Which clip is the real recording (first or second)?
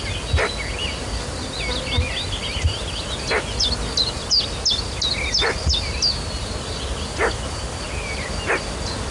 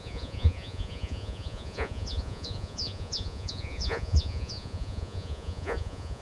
first